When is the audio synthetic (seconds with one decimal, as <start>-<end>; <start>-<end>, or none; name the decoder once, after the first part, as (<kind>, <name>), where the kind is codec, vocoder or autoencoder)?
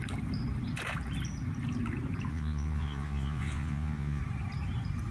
2.3-4.2 (vocoder, Vocos)